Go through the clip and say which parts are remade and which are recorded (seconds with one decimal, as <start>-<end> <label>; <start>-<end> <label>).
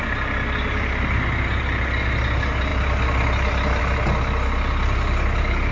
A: 0.0-5.7 recorded